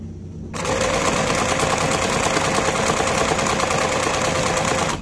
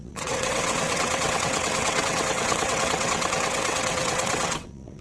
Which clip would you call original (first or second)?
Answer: first